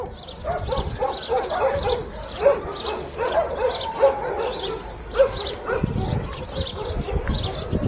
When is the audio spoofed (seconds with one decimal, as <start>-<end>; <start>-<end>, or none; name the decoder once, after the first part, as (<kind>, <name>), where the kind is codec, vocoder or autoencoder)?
none